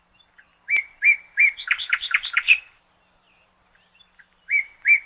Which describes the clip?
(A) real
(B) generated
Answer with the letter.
B